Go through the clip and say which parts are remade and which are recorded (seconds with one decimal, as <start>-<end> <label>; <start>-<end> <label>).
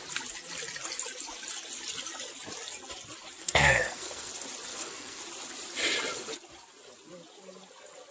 0.0-3.4 recorded; 3.4-4.3 remade; 4.3-4.7 recorded; 4.7-5.2 remade; 5.2-8.1 recorded